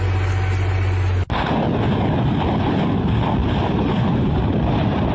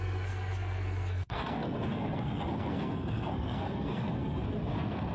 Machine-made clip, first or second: second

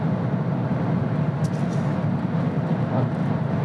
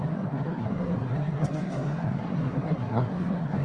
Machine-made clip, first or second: second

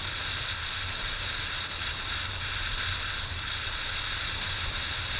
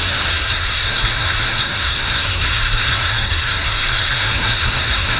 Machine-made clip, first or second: second